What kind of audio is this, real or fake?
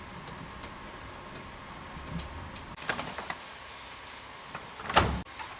real